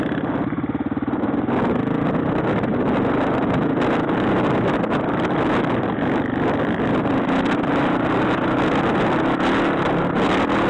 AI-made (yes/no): no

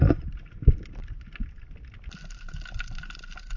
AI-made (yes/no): no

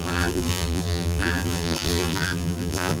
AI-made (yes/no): yes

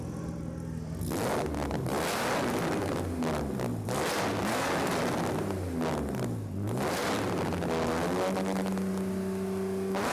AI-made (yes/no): no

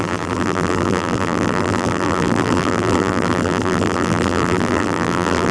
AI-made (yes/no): yes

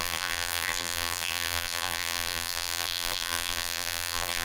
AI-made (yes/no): yes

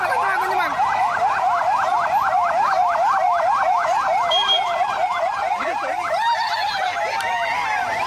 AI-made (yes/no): no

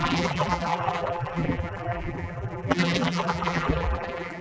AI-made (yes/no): yes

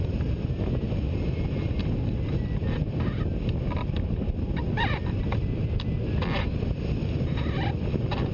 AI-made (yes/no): no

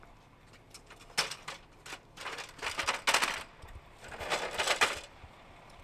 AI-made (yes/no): no